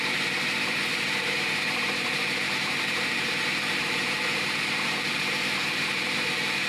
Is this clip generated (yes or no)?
yes